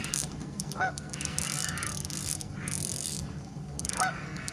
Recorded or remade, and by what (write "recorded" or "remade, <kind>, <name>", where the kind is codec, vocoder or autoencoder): remade, codec, SNAC